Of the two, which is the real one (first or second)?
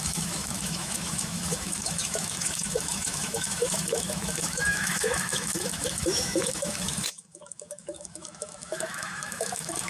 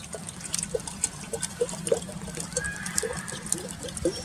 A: second